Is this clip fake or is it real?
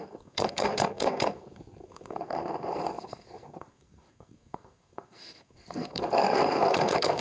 fake